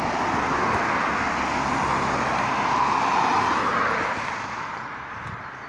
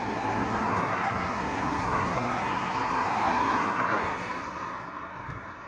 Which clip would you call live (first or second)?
first